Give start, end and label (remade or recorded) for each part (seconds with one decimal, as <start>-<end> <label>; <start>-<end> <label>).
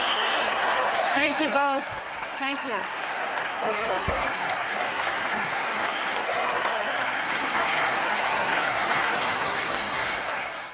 0.0-10.7 remade